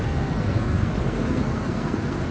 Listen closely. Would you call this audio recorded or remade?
remade